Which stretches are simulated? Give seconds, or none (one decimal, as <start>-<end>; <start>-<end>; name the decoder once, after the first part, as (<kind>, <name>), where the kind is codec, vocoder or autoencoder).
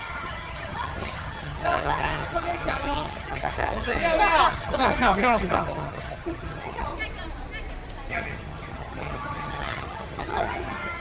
0.0-4.0 (vocoder, HiFi-GAN); 4.5-6.9; 8.1-11.0